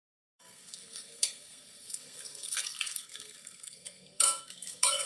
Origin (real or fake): fake